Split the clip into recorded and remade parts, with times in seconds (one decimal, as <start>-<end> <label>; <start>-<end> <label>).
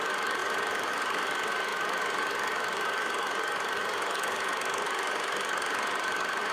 0.0-6.5 remade